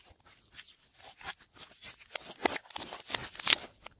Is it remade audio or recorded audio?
recorded